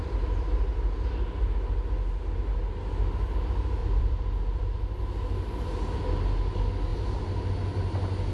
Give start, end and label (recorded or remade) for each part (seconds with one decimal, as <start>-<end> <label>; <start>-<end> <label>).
0.0-3.8 recorded; 3.8-5.0 remade; 5.0-6.9 recorded; 6.9-7.5 remade; 7.5-8.3 recorded